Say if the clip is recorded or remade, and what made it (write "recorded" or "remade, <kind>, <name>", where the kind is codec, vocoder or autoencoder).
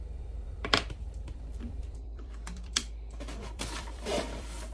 remade, vocoder, BigVGAN v2